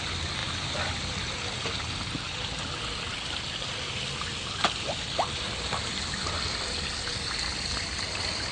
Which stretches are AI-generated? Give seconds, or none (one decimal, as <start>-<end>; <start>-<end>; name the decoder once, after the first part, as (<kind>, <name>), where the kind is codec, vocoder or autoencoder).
none

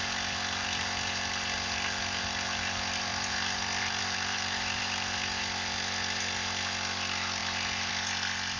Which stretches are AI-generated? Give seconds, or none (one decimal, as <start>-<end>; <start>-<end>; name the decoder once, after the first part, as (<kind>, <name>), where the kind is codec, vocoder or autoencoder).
3.1-5.2 (vocoder, BigVGAN v2); 7.4-7.9

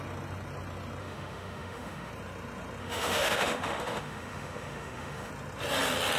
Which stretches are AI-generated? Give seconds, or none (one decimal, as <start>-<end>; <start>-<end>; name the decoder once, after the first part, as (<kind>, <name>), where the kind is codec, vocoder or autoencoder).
1.0-2.1 (autoencoder, DAC-VAE); 2.8-5.3

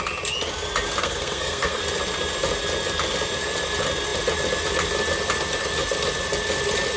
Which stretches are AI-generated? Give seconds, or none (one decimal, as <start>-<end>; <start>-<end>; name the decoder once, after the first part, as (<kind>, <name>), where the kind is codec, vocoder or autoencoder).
1.0-1.8 (codec, SNAC)

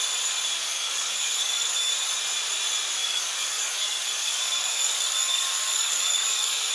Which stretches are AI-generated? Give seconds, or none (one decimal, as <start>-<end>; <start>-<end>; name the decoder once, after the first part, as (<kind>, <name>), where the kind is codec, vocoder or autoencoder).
0.6-1.9 (codec, DAC); 3.0-6.7

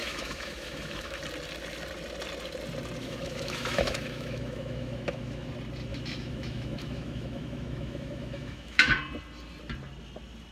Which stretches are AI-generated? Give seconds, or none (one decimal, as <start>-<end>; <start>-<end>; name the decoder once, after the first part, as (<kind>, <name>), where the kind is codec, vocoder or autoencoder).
0.0-1.2 (autoencoder, DAC-VAE); 3.0-5.5; 5.9-8.9

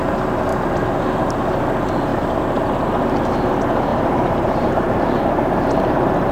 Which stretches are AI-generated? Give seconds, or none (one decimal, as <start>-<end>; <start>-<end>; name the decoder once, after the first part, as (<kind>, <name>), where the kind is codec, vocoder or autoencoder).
3.9-5.2 (vocoder, BigVGAN v2)

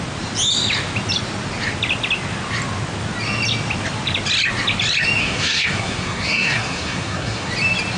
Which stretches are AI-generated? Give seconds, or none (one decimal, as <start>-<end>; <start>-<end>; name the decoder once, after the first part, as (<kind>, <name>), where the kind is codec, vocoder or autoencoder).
5.2-7.5 (codec, SNAC)